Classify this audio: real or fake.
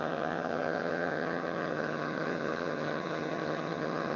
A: fake